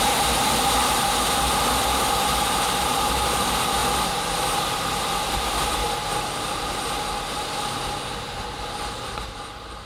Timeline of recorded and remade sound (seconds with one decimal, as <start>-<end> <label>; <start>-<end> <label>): 0.0-9.9 recorded